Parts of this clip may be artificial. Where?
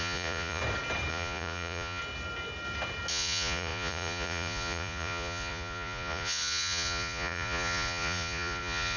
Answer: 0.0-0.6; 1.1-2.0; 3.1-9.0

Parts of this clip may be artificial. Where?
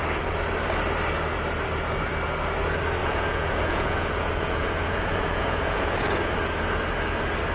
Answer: 3.0-6.3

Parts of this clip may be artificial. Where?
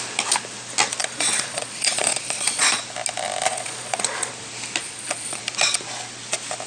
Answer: 1.0-2.8; 3.5-4.3; 4.8-5.4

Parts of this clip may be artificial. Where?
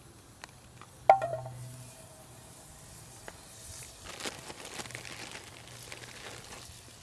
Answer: none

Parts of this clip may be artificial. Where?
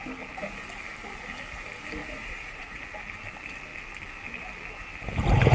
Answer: 2.0-2.8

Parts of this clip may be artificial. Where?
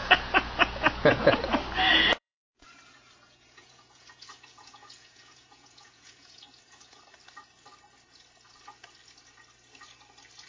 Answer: 0.0-1.5; 1.9-7.0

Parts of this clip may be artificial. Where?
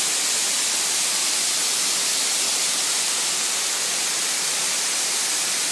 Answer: none